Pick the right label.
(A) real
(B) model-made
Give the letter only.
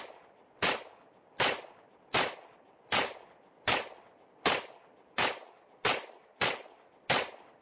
A